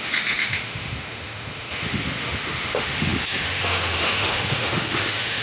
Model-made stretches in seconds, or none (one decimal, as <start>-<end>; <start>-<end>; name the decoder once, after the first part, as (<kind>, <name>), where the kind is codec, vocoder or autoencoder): 0.0-5.4 (autoencoder, DAC-VAE)